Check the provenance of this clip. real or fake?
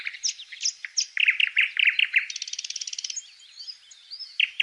real